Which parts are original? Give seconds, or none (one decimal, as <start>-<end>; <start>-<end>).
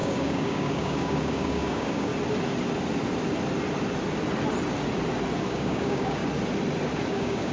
2.1-5.5; 6.2-7.1